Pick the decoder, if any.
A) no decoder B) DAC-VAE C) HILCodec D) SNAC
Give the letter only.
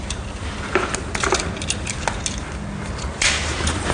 A